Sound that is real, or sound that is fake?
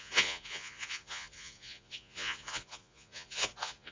fake